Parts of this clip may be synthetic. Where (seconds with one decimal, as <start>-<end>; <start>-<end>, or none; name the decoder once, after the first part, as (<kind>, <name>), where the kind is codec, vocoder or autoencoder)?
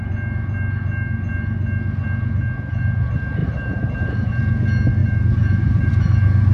3.4-4.4 (vocoder, BigVGAN v2); 5.0-5.9